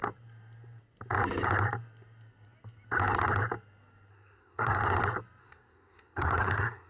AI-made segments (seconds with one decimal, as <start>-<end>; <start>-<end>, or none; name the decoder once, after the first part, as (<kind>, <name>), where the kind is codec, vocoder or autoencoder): 4.1-4.8 (codec, SNAC); 5.4-6.9